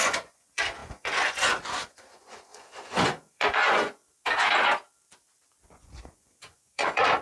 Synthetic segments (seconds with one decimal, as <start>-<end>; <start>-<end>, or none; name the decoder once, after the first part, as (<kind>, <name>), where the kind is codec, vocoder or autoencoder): 0.0-4.0 (vocoder, Vocos); 5.7-7.2